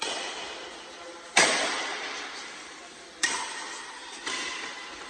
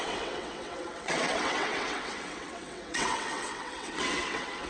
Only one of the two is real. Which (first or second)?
first